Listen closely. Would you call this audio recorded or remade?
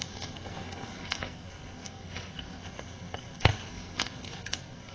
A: remade